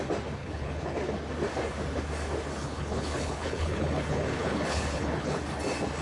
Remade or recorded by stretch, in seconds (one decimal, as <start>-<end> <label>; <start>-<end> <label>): 0.0-0.4 recorded; 0.4-1.1 remade; 1.1-2.6 recorded; 2.6-5.4 remade; 5.4-6.0 recorded